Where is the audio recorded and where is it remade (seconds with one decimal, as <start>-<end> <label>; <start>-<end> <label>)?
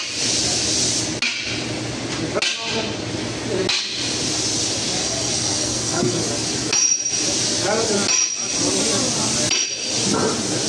0.0-5.0 recorded; 5.0-6.2 remade; 6.2-10.7 recorded